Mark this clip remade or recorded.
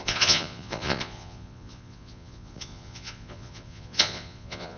remade